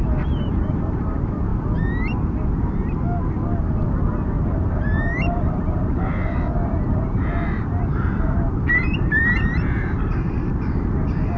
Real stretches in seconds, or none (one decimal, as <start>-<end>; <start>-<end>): 1.5-4.3